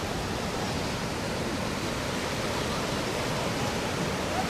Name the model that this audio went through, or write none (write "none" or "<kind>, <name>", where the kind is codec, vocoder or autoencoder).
none